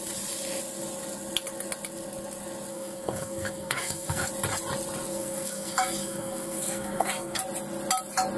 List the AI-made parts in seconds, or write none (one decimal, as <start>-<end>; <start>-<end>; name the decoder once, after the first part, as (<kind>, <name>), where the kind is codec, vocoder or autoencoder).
2.7-4.3 (codec, SNAC); 5.1-7.4